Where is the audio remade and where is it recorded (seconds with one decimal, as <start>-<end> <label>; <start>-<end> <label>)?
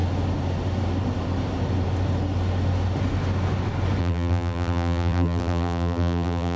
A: 0.0-4.0 recorded; 4.0-6.6 remade